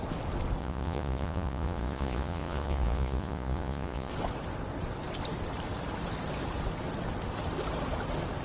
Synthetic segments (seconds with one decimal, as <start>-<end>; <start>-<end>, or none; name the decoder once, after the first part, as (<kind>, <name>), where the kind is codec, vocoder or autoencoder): 0.6-4.1 (vocoder, Vocos)